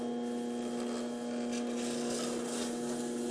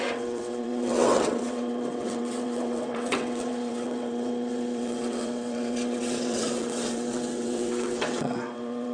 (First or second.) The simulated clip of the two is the second